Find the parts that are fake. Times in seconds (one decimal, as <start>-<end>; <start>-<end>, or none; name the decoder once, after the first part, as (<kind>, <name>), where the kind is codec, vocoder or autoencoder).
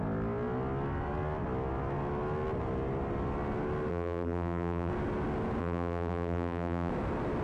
3.9-4.9 (vocoder, BigVGAN v2); 5.6-6.9